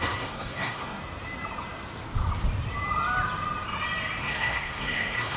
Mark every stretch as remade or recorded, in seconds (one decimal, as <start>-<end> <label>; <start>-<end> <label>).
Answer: 0.0-1.0 remade; 1.0-4.2 recorded; 4.2-5.4 remade